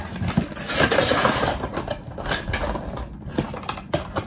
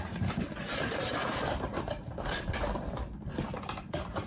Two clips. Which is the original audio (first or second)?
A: first